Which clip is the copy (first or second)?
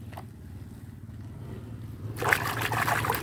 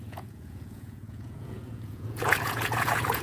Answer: second